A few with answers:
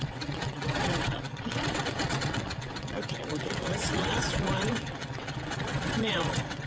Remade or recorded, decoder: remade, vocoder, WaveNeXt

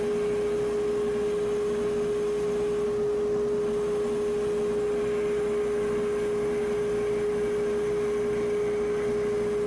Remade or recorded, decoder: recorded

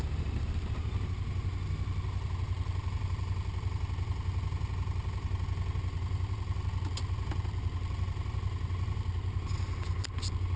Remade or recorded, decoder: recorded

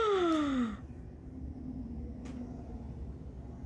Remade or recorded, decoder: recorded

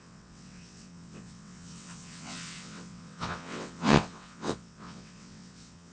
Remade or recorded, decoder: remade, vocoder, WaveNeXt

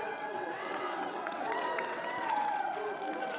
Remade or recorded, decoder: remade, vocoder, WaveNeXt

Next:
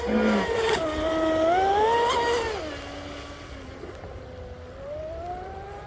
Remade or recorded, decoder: recorded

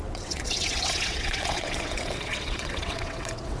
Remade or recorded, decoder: remade, vocoder, WaveNeXt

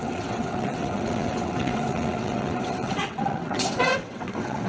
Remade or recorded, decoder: remade, vocoder, WaveNeXt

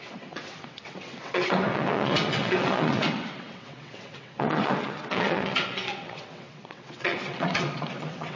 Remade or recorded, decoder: remade, vocoder, WaveNeXt